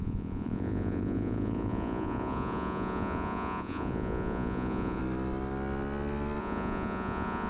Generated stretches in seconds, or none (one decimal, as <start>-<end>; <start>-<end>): 0.0-5.0; 6.4-7.5